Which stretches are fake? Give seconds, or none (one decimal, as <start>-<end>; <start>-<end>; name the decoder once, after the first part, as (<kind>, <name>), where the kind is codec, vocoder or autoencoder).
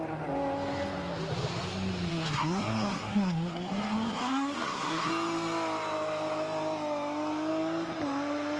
2.1-5.1 (codec, SNAC)